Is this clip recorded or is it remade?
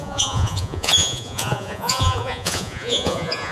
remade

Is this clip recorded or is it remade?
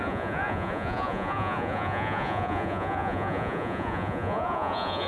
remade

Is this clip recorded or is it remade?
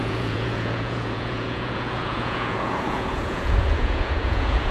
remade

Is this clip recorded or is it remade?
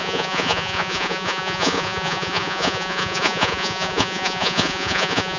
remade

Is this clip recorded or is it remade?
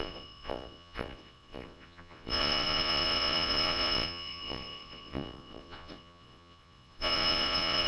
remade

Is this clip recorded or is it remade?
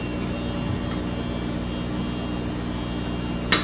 recorded